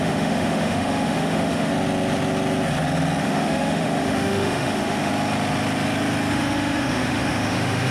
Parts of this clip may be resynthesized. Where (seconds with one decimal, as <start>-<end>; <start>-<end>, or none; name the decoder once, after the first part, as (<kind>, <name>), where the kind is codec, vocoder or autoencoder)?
0.0-1.7 (autoencoder, DAC-VAE); 3.2-5.1; 6.3-7.9